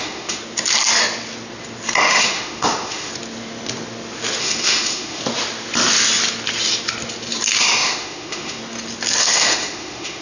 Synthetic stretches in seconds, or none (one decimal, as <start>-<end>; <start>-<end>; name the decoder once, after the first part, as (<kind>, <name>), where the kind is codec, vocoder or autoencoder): 0.0-0.4 (autoencoder, DAC-VAE); 2.0-3.1; 4.4-5.2; 7.6-8.6; 9.2-10.2